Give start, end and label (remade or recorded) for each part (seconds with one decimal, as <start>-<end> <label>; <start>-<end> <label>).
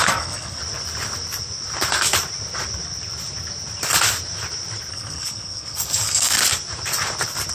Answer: 0.0-0.6 remade; 0.6-4.9 recorded; 4.9-6.4 remade; 6.4-7.5 recorded